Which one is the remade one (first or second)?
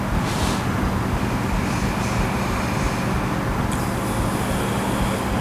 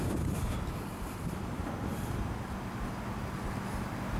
second